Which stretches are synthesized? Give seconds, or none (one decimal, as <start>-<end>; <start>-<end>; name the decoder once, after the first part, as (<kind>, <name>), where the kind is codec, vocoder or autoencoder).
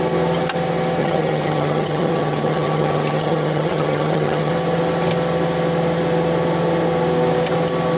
1.0-4.5 (vocoder, HiFi-GAN)